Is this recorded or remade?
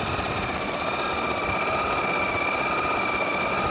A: recorded